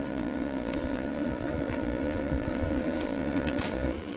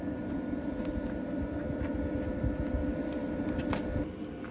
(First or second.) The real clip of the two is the second